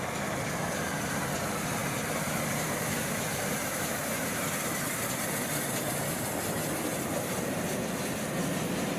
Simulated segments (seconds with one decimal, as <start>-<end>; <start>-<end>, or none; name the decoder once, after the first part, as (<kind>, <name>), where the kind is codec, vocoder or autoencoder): 1.8-4.5 (vocoder, BigVGAN v2)